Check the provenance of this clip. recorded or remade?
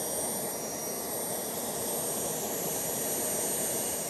recorded